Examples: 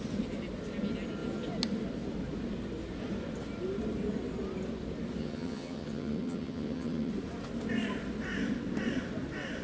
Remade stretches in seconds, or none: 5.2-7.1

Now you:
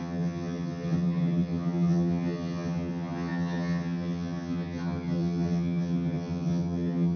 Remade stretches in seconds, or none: 0.0-7.2

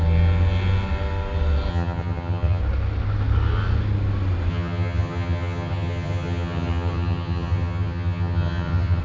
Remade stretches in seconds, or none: 1.7-2.6; 4.5-9.0

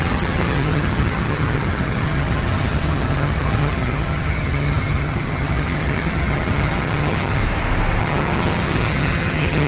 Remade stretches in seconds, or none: 0.0-7.4; 8.0-9.7

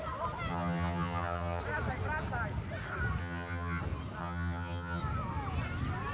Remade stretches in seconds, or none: 0.5-1.6; 3.2-3.8; 4.2-5.0

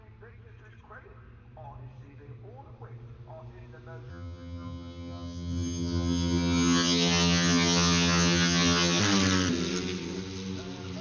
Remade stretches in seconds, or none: 4.1-9.0

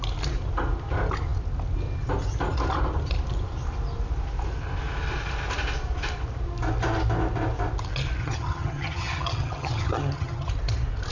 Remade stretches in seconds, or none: 8.2-10.5

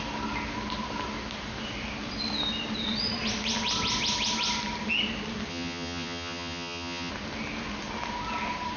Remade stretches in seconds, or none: 5.5-7.1